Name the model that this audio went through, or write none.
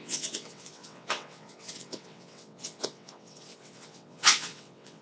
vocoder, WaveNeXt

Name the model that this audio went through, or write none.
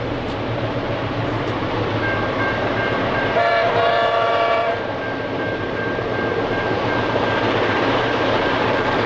vocoder, BigVGAN v2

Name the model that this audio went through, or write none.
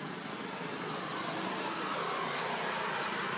none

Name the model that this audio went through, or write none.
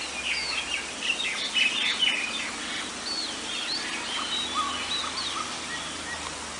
none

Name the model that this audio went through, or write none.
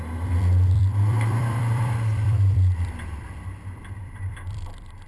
vocoder, BigVGAN v2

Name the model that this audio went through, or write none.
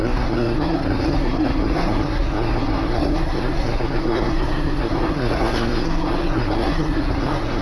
codec, SNAC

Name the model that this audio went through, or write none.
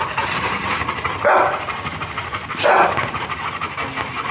none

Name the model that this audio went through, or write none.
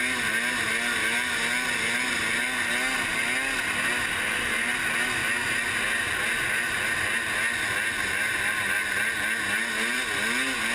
none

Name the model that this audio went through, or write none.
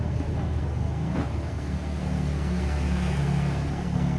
codec, SNAC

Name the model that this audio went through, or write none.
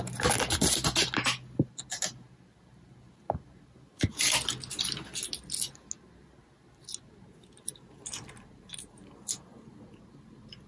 none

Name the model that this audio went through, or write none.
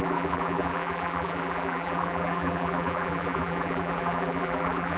vocoder, BigVGAN v2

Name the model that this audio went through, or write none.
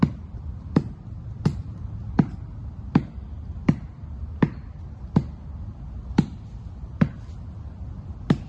none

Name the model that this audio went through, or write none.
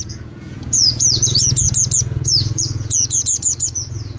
vocoder, Vocos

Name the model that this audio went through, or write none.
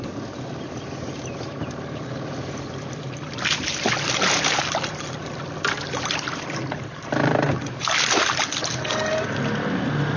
none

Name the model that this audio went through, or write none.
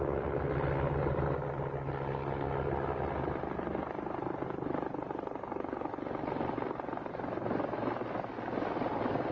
none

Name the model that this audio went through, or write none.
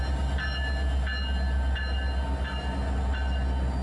none